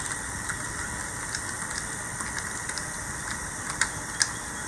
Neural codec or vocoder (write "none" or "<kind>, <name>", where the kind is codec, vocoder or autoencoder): none